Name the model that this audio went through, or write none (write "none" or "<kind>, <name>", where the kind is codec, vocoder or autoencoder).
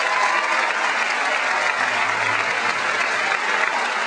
none